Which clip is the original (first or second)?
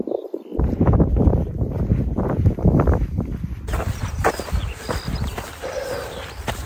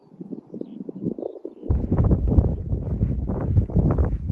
second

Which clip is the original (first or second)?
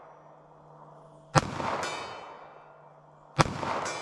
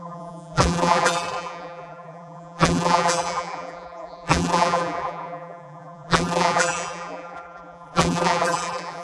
first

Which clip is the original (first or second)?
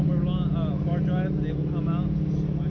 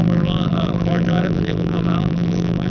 first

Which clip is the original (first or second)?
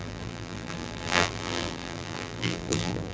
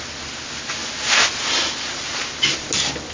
second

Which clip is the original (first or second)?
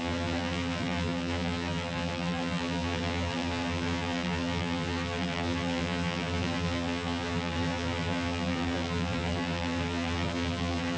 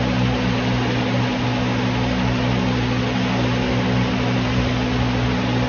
second